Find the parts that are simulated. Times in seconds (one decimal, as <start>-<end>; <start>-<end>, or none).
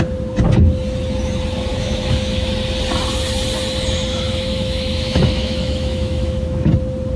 1.7-2.5; 4.1-6.7